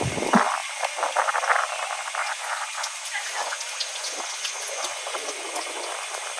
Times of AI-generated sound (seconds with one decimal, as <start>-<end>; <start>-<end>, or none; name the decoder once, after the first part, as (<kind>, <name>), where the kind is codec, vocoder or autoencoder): 2.2-5.9 (vocoder, Vocos)